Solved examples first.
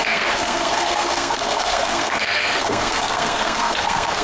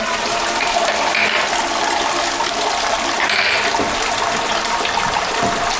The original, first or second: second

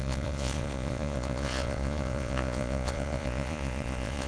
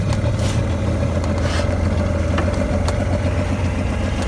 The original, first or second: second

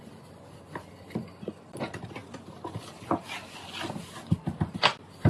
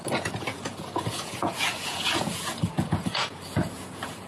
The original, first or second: first